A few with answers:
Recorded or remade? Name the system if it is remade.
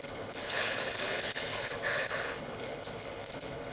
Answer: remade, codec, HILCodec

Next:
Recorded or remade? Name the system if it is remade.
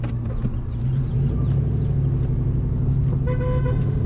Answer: recorded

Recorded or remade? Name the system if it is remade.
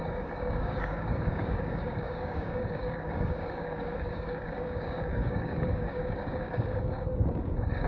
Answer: remade, codec, DAC